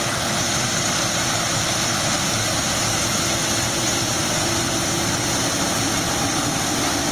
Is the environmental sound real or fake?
real